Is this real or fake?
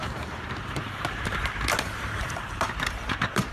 fake